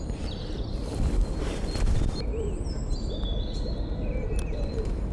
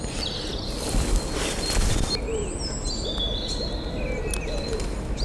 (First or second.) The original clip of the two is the second